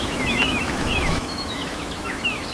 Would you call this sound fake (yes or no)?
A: yes